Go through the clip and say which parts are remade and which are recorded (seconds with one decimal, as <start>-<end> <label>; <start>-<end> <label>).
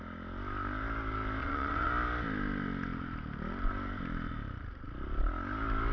0.0-1.4 recorded; 1.4-1.9 remade; 1.9-5.9 recorded